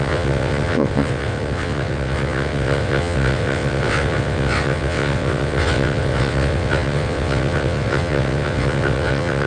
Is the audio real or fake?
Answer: fake